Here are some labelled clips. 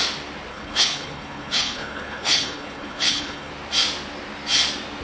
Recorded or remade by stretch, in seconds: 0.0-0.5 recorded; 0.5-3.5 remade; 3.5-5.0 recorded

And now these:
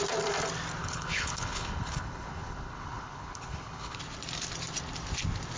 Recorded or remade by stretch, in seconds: 0.0-0.8 recorded; 0.8-4.0 remade; 4.0-5.6 recorded

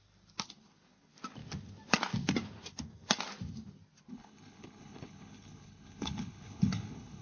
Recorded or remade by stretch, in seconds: 0.0-4.1 recorded; 4.1-7.2 remade

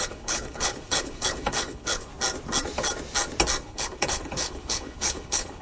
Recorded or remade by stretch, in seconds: 0.0-2.1 remade; 2.1-3.6 recorded; 3.6-5.6 remade

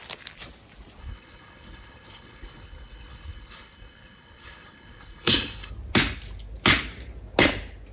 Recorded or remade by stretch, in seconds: 0.0-1.0 recorded; 1.0-5.7 remade; 5.7-7.9 recorded

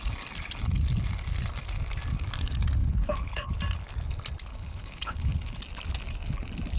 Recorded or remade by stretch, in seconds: 0.0-2.8 recorded; 2.8-3.5 remade; 3.5-4.5 recorded; 4.5-5.6 remade; 5.6-6.8 recorded

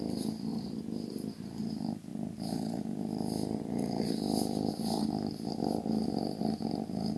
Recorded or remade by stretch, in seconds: 0.0-7.2 recorded

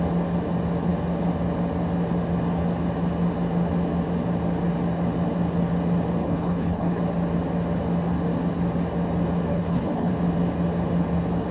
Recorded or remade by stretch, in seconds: 0.0-6.2 recorded; 6.2-7.0 remade; 7.0-9.5 recorded; 9.5-10.1 remade; 10.1-11.5 recorded